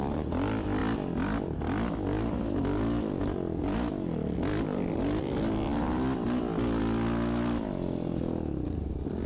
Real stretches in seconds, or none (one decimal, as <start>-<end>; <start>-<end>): 0.0-9.3